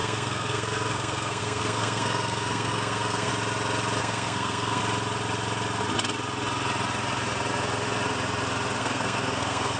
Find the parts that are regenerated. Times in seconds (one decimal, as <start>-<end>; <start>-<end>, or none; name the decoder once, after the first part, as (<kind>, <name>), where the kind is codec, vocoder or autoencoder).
0.0-3.3 (codec, SNAC); 4.0-4.8; 8.8-9.8